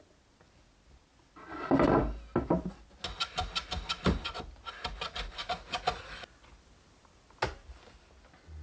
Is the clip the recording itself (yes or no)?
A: yes